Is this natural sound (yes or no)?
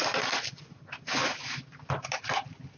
yes